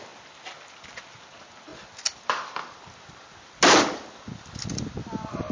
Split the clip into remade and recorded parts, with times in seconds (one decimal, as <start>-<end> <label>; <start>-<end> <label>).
0.0-5.5 recorded